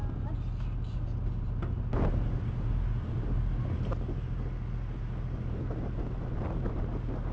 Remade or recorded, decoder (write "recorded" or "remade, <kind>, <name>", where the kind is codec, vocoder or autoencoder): recorded